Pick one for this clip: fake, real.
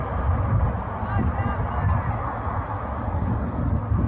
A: real